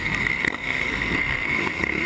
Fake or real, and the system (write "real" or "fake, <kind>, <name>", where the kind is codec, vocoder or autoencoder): fake, codec, SNAC